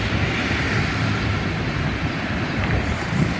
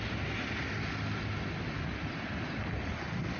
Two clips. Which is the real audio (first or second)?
second